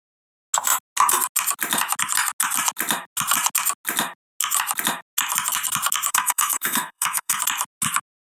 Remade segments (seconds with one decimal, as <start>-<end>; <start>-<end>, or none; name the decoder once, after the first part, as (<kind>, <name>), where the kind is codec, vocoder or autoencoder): 6.1-7.4 (codec, SNAC)